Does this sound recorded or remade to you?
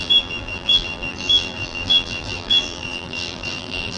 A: remade